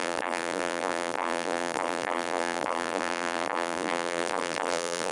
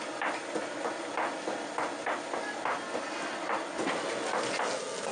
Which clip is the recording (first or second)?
second